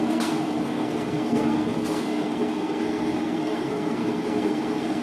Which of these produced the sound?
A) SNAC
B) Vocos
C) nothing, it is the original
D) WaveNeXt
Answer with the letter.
A